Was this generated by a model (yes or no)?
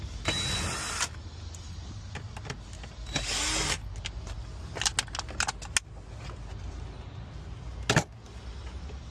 no